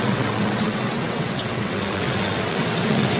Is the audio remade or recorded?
remade